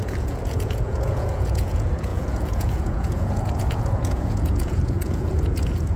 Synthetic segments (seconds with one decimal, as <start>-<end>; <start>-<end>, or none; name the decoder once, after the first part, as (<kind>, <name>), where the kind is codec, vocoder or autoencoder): 0.0-6.0 (vocoder, Vocos)